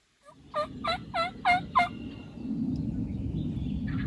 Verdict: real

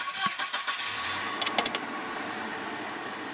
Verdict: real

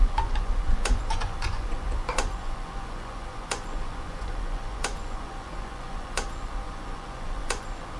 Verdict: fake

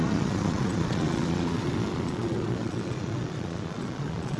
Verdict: fake